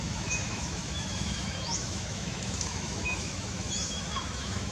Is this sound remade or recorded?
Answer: remade